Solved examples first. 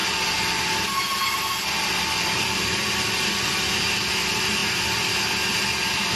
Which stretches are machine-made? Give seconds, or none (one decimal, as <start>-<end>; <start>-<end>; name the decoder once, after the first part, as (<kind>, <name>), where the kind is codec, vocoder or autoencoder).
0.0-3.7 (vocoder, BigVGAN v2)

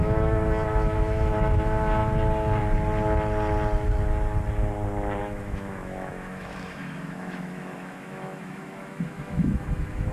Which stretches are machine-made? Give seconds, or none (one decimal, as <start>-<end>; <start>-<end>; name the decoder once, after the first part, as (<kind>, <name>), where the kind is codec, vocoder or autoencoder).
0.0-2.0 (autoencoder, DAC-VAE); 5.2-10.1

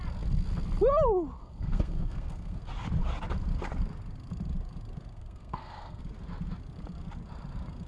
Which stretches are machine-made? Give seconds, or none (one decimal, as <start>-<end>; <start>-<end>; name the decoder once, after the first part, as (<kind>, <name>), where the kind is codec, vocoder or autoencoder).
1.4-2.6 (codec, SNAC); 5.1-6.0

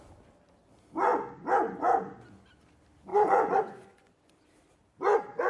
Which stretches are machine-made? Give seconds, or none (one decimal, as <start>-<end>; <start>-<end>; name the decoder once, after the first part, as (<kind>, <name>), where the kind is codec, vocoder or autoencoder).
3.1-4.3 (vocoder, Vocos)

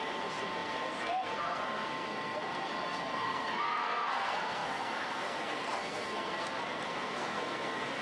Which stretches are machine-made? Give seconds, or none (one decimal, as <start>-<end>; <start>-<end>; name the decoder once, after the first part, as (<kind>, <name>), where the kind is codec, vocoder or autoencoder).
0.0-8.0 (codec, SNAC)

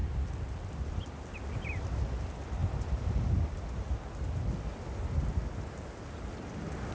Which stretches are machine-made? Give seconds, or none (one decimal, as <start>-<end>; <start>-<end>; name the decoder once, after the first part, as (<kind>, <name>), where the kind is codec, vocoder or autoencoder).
none

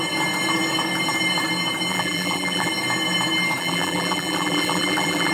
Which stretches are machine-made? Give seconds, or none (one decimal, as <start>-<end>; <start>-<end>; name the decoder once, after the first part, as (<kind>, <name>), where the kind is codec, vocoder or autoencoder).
1.9-2.7 (vocoder, BigVGAN v2); 3.6-5.3